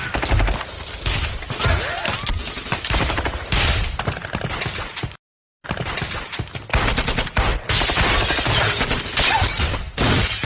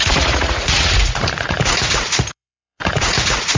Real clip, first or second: first